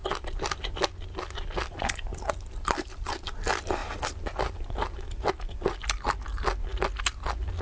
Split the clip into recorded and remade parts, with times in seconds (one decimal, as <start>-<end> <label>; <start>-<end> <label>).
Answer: 0.0-7.6 recorded